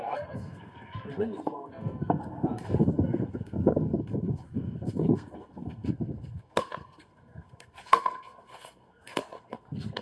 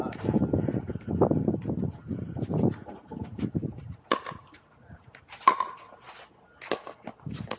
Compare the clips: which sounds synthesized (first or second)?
first